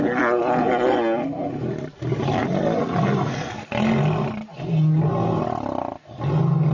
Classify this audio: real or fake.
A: real